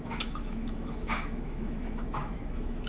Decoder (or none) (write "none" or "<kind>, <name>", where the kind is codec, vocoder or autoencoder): autoencoder, DAC-VAE